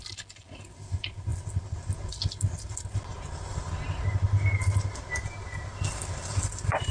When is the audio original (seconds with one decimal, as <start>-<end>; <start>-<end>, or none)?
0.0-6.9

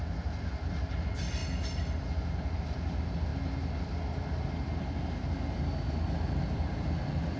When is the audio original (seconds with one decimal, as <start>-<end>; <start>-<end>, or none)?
1.4-2.6; 3.3-5.9

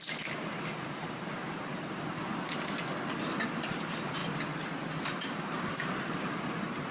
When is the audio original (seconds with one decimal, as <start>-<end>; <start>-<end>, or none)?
2.2-3.7; 4.2-5.0

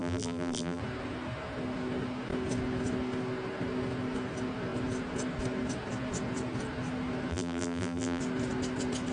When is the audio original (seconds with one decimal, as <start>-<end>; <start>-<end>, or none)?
0.8-7.3; 8.2-9.1

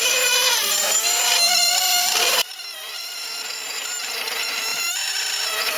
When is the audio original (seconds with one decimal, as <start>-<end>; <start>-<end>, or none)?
none